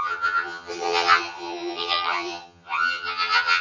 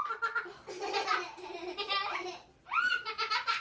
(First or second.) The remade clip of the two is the first